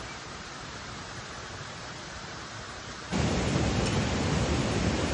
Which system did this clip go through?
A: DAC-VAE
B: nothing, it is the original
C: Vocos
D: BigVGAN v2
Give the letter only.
D